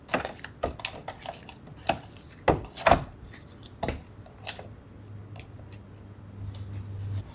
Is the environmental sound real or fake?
real